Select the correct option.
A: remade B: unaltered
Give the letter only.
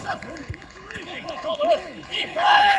A